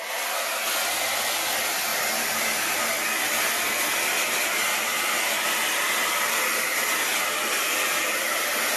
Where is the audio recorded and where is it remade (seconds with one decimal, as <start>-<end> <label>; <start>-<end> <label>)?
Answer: 0.0-8.8 recorded